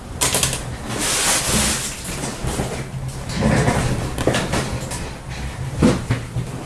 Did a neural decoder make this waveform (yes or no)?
no